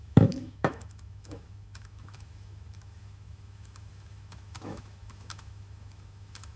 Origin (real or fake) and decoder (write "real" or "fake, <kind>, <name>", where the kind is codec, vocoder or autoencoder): fake, autoencoder, DAC-VAE